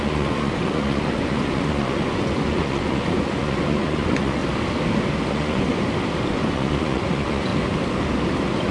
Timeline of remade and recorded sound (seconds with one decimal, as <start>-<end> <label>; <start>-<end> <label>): 0.0-4.4 remade; 4.4-5.3 recorded; 5.3-5.7 remade; 5.7-6.3 recorded; 6.3-7.5 remade; 7.5-8.7 recorded